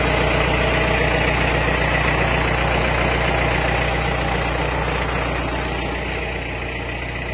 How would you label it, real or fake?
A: real